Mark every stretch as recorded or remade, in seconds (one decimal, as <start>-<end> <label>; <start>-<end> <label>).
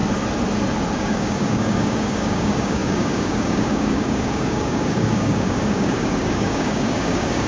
0.0-1.0 recorded; 1.0-7.5 remade